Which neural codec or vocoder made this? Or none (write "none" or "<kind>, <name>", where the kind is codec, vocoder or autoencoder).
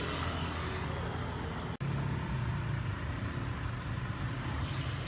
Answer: none